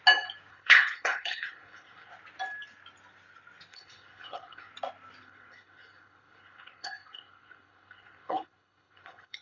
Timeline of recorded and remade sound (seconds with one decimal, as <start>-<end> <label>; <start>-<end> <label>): 0.0-0.5 recorded; 0.5-2.1 remade; 2.1-3.7 recorded; 3.7-4.7 remade; 4.7-5.2 recorded; 5.2-9.4 remade